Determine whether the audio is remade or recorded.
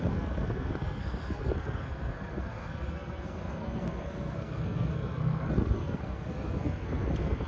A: remade